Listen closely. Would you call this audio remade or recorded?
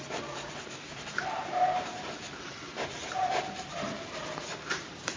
remade